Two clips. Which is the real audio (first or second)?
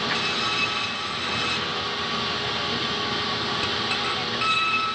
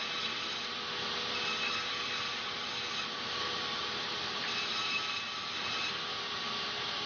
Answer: first